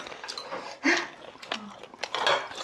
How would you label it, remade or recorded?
recorded